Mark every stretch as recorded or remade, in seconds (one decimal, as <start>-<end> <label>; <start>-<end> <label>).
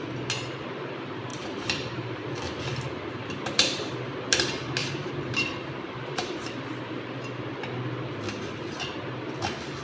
0.0-1.3 recorded; 1.3-2.3 remade; 2.3-3.2 recorded; 3.2-3.9 remade; 3.9-4.8 recorded; 4.8-6.6 remade; 6.6-9.8 recorded